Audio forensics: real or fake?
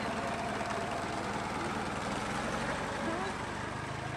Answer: real